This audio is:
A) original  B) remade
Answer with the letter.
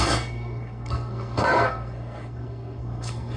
B